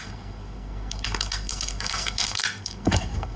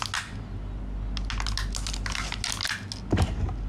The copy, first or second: first